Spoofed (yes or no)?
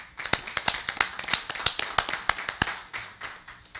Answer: no